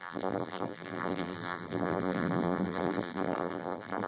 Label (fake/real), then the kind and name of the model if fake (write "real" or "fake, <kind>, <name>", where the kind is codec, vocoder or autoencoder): fake, vocoder, BigVGAN v2